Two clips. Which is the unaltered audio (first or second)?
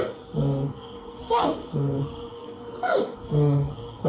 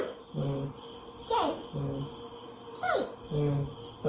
second